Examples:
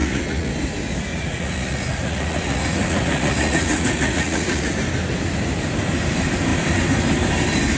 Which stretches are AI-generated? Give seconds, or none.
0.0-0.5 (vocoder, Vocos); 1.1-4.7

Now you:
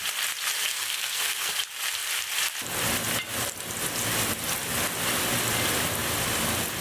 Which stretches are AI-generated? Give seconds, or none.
0.7-1.5 (codec, SNAC)

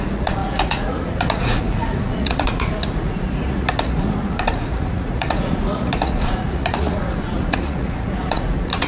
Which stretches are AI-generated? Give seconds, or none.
0.0-8.9 (vocoder, Vocos)

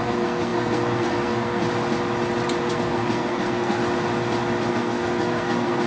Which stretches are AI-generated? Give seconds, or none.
0.0-1.6 (codec, SNAC); 2.7-3.8; 4.7-5.9